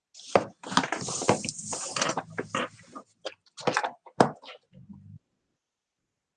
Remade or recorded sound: remade